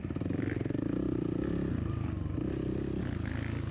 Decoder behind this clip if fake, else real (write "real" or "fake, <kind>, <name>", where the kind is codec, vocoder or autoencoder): real